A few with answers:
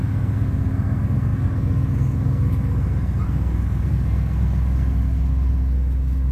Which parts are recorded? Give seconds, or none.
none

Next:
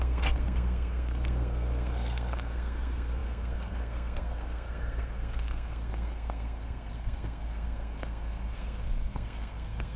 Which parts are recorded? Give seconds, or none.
none